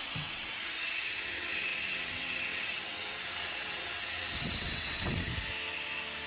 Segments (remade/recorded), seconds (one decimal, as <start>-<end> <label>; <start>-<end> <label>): 0.0-5.3 remade; 5.3-6.3 recorded